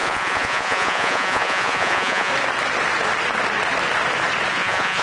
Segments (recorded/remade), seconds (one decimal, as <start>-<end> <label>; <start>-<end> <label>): 0.0-2.3 remade; 2.3-4.5 recorded; 4.5-5.0 remade